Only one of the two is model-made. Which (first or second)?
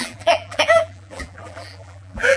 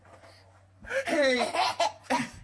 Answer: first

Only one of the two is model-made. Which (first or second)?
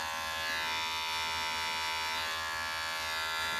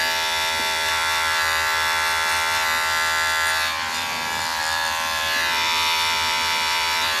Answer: second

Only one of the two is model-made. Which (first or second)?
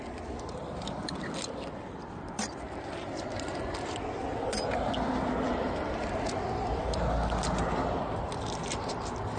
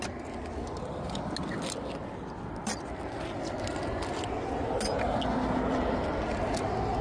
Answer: first